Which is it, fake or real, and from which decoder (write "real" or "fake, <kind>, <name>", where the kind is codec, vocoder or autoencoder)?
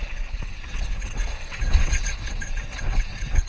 fake, vocoder, WaveNeXt